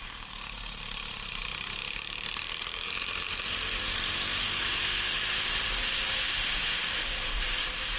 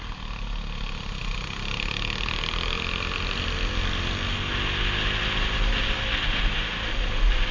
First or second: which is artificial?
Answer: first